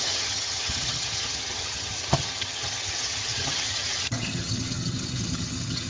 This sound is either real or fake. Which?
fake